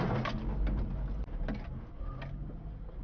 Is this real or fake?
real